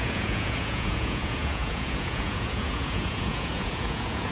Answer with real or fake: fake